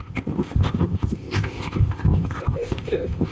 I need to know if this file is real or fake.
fake